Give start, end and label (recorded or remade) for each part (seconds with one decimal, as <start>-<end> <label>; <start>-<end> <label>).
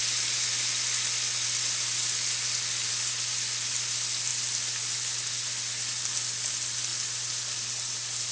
0.0-8.3 recorded